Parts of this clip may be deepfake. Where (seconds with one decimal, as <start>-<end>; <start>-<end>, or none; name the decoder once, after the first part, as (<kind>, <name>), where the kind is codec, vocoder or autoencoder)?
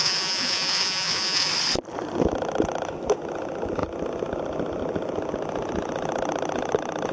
0.0-1.5 (vocoder, Vocos)